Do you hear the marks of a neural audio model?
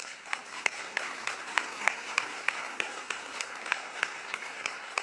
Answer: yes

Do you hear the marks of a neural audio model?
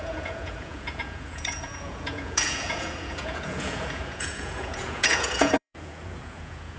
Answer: yes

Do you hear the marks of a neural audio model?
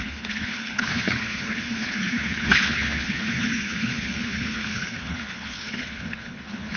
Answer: yes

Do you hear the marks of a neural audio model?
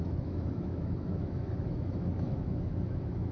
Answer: yes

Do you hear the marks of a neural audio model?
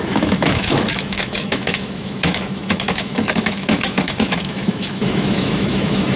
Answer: yes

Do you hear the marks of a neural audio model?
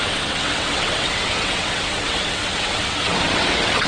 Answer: yes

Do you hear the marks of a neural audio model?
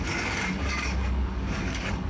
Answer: yes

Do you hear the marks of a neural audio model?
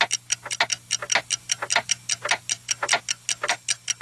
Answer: no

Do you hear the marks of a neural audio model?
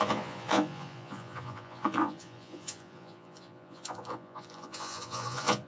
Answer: yes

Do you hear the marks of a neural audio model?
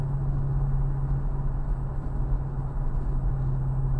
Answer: no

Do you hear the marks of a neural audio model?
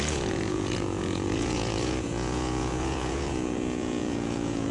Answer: yes